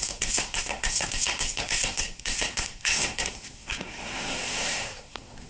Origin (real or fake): fake